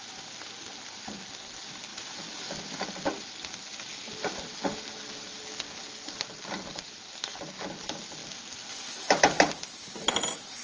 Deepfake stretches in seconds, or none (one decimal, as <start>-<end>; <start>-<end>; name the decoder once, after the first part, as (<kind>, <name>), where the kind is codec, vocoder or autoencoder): 1.9-2.4 (vocoder, BigVGAN v2)